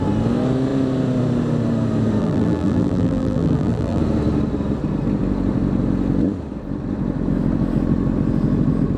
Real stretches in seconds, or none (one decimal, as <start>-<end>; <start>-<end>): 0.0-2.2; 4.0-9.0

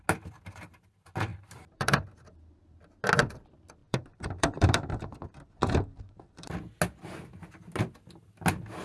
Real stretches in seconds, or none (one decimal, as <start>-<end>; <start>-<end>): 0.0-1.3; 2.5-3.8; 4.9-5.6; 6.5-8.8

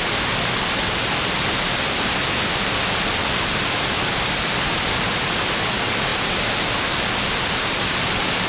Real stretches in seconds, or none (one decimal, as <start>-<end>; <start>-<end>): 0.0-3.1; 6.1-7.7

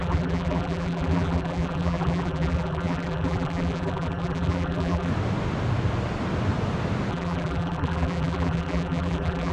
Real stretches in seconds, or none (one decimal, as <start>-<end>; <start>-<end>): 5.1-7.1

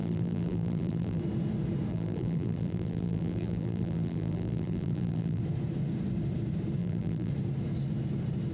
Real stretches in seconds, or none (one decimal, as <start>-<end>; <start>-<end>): 1.2-1.9; 5.4-6.8; 7.3-8.5

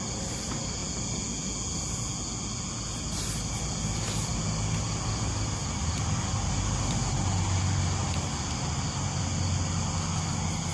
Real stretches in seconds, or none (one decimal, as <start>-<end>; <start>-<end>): 0.0-10.7

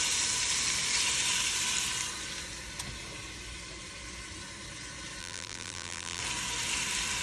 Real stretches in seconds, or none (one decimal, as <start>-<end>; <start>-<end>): 0.0-5.2; 6.2-7.2

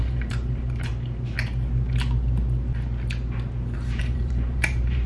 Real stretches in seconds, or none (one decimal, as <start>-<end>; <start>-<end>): 0.9-4.0